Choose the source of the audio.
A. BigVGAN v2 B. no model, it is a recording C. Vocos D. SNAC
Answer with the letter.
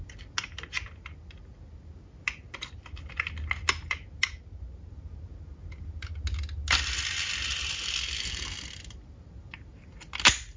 B